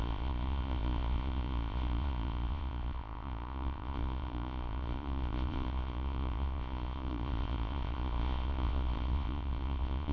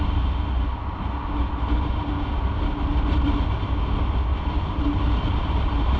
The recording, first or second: second